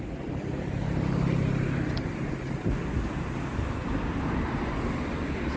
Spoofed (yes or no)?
no